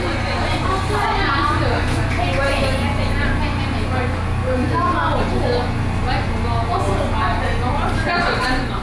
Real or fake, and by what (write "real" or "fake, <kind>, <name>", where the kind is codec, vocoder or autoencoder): real